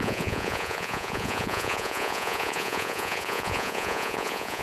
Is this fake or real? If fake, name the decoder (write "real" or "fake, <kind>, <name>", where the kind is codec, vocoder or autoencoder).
fake, vocoder, Vocos